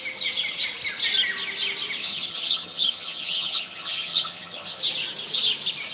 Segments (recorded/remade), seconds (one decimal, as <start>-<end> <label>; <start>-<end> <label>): 0.0-2.0 recorded; 2.0-4.8 remade; 4.8-5.9 recorded